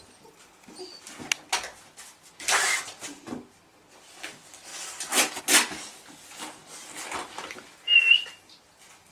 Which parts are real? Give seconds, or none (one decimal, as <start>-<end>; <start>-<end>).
0.0-9.1